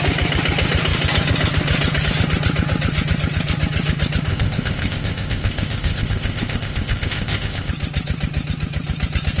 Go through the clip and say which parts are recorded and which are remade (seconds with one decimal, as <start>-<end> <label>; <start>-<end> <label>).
0.0-4.3 recorded; 4.3-7.7 remade; 7.7-9.4 recorded